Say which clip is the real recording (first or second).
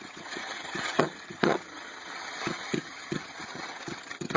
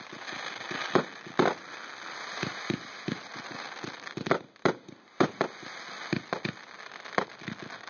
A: second